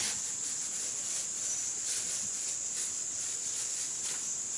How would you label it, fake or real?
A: real